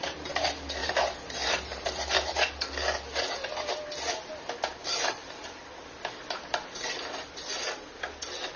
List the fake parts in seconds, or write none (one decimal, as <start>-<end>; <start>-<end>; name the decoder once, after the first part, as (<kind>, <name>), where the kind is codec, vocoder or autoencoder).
0.8-1.8 (vocoder, BigVGAN v2); 5.2-6.7